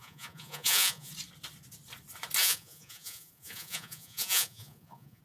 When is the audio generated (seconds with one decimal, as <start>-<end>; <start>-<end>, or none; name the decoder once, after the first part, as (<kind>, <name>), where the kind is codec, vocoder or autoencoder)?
0.0-1.1 (vocoder, Vocos); 2.4-5.2